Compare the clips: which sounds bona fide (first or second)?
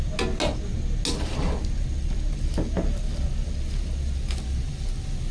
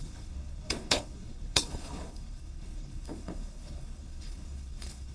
first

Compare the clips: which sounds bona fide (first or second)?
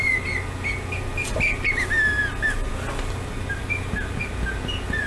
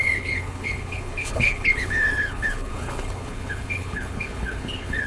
first